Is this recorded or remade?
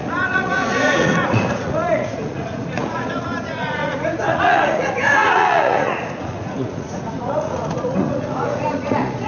remade